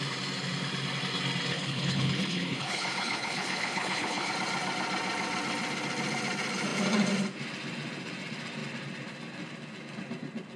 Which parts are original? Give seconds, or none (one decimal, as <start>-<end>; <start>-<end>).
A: 0.0-1.5; 4.3-10.6